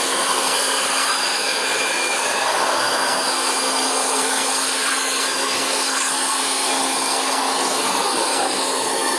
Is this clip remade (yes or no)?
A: yes